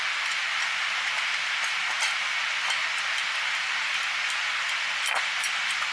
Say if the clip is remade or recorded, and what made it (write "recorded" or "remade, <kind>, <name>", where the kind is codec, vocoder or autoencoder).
recorded